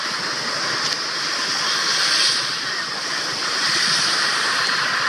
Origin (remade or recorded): recorded